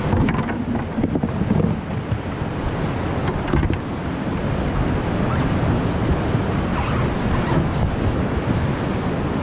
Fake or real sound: real